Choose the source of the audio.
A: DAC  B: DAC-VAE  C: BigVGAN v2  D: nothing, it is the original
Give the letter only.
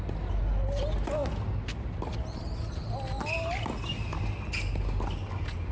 D